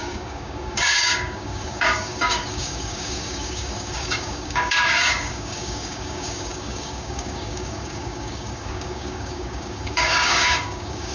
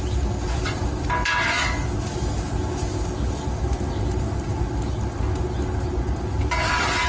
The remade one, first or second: first